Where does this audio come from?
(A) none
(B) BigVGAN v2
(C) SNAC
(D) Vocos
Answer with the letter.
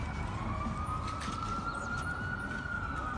A